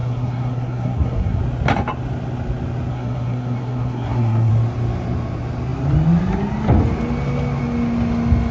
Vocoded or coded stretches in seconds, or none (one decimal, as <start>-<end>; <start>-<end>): 0.0-1.4; 2.9-4.5